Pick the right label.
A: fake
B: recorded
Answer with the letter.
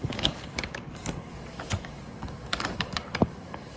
A